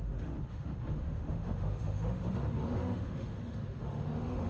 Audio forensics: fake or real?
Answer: fake